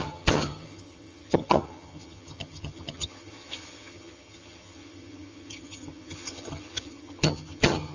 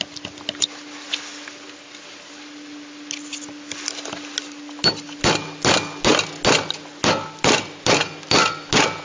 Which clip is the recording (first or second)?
second